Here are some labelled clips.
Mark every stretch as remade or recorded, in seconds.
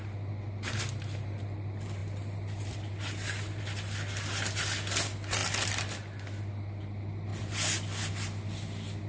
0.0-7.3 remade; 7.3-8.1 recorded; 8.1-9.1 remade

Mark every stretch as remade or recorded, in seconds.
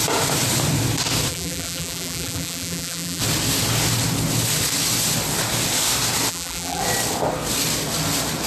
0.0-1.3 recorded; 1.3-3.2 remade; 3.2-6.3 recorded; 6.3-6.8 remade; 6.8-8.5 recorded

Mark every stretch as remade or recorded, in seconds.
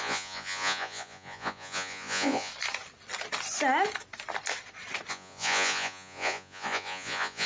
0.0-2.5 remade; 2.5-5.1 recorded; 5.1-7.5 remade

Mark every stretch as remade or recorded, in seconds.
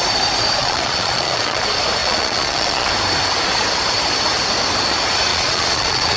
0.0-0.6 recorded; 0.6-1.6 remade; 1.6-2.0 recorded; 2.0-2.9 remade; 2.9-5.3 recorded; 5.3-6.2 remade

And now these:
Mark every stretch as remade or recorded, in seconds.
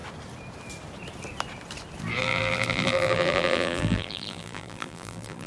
0.0-2.2 recorded; 2.2-5.5 remade